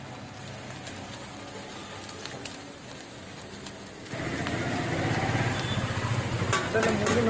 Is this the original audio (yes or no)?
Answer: yes